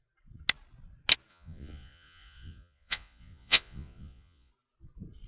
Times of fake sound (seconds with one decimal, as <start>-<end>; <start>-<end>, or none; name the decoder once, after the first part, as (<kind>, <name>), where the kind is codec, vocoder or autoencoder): 1.3-4.5 (vocoder, Vocos)